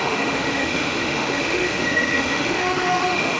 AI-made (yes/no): yes